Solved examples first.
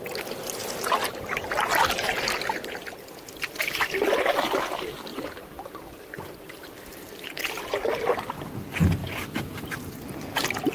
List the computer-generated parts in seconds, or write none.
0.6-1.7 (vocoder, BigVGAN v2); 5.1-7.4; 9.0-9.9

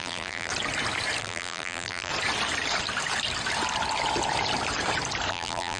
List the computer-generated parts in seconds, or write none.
0.0-0.5 (vocoder, BigVGAN v2); 1.2-2.1; 5.3-5.8

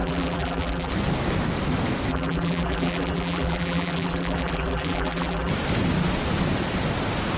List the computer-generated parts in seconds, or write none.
0.0-0.9 (vocoder, BigVGAN v2); 2.1-5.5